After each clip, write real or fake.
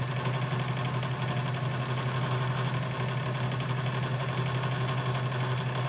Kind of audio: real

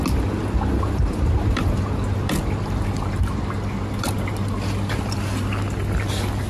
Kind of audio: real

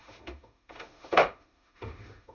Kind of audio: fake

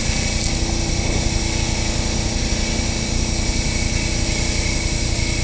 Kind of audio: real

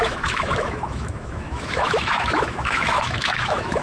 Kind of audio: fake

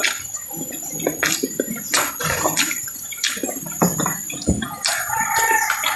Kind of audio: real